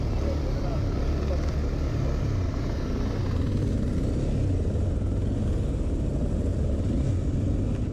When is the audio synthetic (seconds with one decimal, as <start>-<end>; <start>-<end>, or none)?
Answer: none